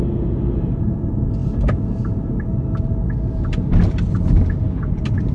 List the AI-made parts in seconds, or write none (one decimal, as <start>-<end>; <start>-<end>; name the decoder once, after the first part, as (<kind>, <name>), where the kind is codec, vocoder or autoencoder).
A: none